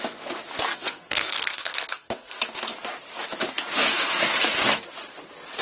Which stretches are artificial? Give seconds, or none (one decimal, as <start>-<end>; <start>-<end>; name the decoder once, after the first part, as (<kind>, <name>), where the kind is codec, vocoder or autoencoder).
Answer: 0.7-2.4 (codec, SNAC)